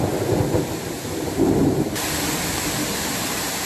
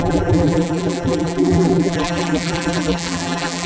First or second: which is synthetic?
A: second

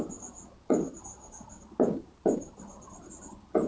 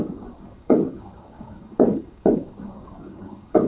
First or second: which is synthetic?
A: second